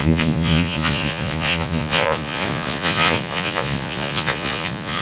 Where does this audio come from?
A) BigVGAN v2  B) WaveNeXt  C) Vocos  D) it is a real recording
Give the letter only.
C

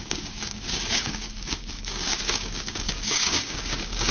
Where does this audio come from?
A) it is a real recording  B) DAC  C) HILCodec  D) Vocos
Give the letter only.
B